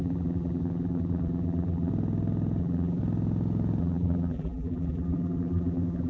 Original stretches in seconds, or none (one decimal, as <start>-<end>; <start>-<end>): 1.9-2.6; 3.0-3.8